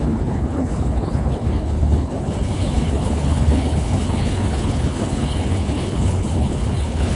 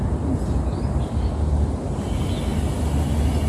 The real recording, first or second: second